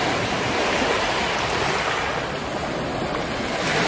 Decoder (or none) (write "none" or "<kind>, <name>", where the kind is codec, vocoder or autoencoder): none